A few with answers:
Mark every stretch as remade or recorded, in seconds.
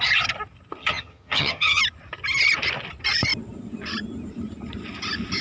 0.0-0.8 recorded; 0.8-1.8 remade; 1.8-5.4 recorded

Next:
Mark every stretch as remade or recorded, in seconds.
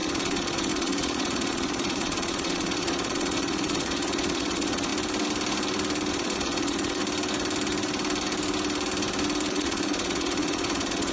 0.0-4.9 remade; 4.9-6.1 recorded; 6.1-7.0 remade; 7.0-9.5 recorded; 9.5-11.1 remade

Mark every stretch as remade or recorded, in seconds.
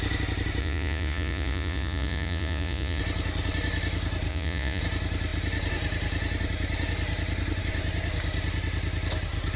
0.0-0.6 recorded; 0.6-3.0 remade; 3.0-4.3 recorded; 4.3-4.8 remade; 4.8-9.6 recorded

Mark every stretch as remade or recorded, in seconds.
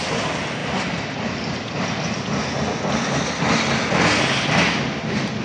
0.0-5.4 recorded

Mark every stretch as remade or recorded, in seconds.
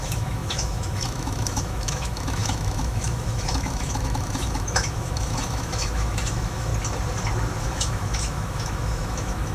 0.0-6.7 remade; 6.7-7.6 recorded; 7.6-9.5 remade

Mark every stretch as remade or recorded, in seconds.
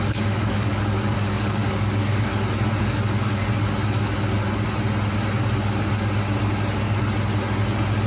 0.0-2.3 remade; 2.3-2.8 recorded; 2.8-3.4 remade; 3.4-8.1 recorded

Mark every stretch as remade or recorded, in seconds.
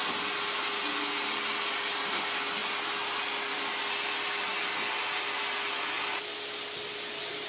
0.0-7.5 recorded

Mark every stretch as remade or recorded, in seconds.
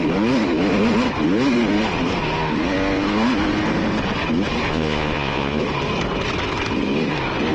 0.0-4.7 recorded; 4.7-5.6 remade; 5.6-7.5 recorded